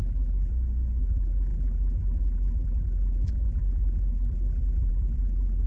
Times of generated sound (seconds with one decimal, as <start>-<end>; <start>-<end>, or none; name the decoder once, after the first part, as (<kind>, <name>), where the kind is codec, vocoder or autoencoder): 0.0-0.5 (vocoder, BigVGAN v2); 1.0-5.7